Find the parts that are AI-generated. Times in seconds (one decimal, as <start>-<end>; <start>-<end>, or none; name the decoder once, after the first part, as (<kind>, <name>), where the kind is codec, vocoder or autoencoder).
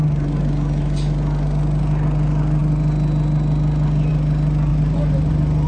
4.7-5.3 (vocoder, BigVGAN v2)